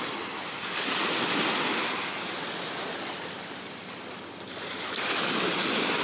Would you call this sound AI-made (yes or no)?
no